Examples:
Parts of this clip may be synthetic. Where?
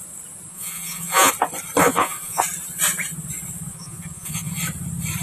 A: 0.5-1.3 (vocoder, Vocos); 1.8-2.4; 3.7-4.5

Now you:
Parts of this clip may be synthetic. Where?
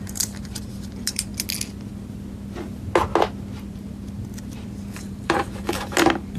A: 0.0-1.3 (vocoder, BigVGAN v2); 5.1-6.4